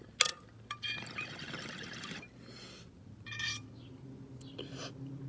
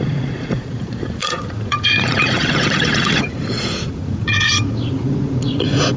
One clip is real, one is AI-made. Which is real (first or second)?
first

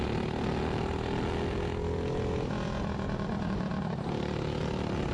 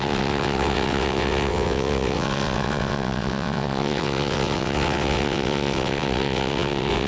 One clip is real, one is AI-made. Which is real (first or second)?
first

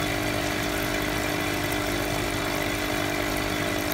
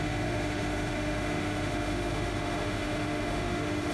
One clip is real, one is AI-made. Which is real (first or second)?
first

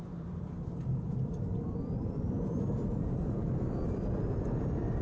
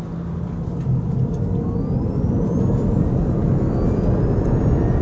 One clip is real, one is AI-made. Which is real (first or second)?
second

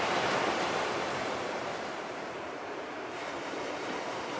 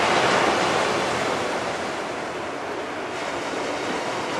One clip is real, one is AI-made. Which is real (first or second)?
second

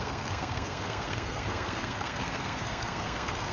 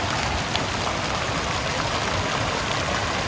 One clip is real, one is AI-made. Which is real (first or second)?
second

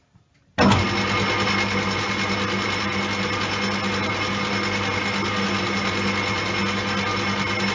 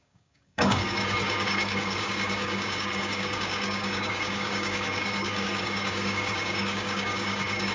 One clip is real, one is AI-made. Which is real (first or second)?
first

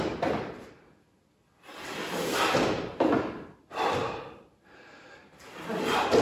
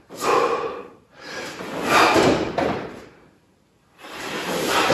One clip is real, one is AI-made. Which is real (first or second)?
first